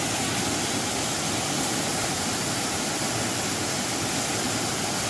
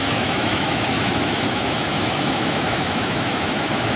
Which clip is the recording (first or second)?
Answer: first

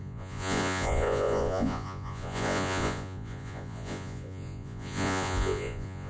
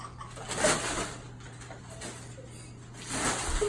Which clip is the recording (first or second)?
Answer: second